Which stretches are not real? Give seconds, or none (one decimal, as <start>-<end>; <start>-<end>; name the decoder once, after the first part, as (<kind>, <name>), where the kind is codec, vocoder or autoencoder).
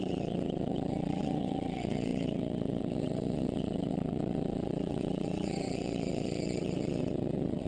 0.0-7.7 (vocoder, WaveNeXt)